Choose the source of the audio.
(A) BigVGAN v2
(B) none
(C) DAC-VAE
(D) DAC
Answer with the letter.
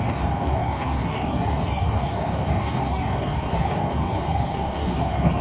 D